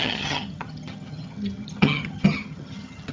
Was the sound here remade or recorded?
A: remade